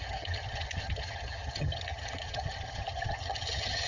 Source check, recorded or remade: remade